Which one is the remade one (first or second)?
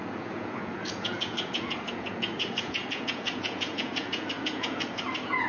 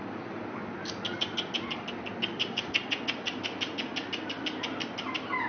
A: first